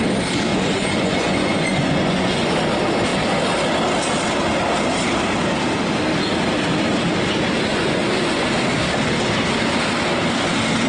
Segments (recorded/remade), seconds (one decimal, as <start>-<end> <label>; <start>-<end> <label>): 0.0-0.5 recorded; 0.5-2.5 remade; 2.5-7.7 recorded; 7.7-8.5 remade; 8.5-10.9 recorded